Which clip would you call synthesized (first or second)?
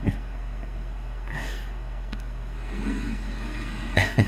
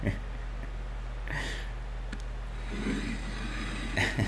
first